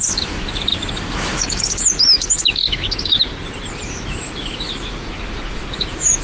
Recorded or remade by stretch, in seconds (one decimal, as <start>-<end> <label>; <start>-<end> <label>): 0.0-3.3 remade; 3.3-3.9 recorded; 3.9-6.2 remade

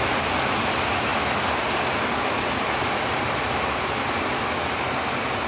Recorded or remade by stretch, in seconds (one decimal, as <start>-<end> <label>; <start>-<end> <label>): 0.0-5.5 recorded

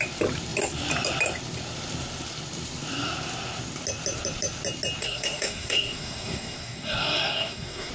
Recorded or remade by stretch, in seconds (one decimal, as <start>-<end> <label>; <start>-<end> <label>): 0.0-5.0 recorded; 5.0-7.9 remade

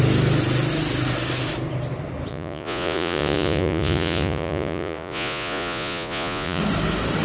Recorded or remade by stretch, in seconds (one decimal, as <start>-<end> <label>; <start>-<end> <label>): 0.0-2.3 recorded; 2.3-6.6 remade; 6.6-7.2 recorded

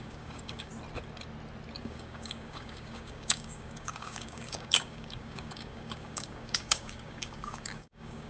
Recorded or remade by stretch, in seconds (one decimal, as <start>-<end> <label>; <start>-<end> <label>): 0.0-0.7 remade; 0.7-1.8 recorded; 1.8-8.3 remade

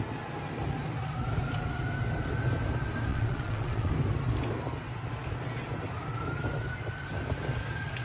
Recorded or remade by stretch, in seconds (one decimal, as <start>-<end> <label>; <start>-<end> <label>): 0.0-3.1 recorded; 3.1-3.9 remade; 3.9-8.0 recorded

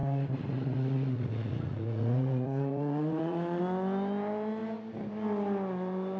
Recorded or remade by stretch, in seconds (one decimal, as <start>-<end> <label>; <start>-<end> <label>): 0.0-3.6 remade; 3.6-6.2 recorded